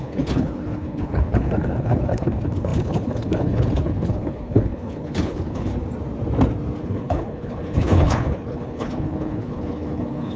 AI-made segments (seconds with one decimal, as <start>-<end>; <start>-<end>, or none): 0.0-5.7; 6.8-10.4

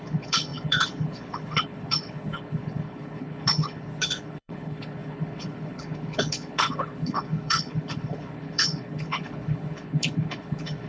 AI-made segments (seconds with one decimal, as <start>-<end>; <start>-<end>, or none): 0.0-10.9

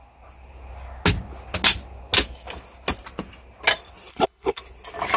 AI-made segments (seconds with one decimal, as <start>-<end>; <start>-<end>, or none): 4.1-4.6

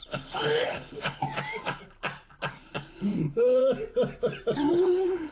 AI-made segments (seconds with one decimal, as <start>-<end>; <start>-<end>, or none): 0.0-1.2; 2.5-3.6; 4.7-5.3

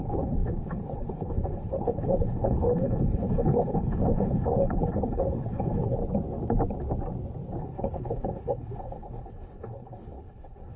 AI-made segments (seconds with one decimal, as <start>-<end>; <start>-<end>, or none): 0.0-6.0; 7.6-10.8

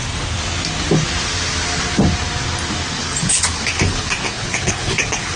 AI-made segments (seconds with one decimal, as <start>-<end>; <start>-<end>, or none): 3.2-5.4